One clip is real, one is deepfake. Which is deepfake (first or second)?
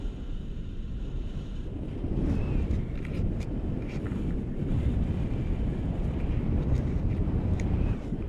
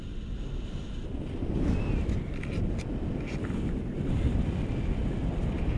first